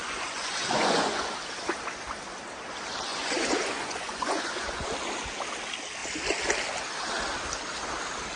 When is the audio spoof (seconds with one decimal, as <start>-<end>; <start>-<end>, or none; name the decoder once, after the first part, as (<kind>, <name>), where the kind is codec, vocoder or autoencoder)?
0.0-1.3 (vocoder, Vocos); 3.1-4.9